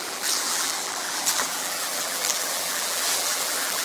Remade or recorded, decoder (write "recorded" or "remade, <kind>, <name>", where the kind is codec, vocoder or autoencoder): remade, vocoder, BigVGAN v2